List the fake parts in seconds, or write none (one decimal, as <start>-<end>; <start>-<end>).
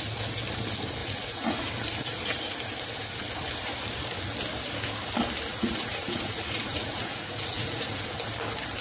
1.0-1.7; 5.5-8.2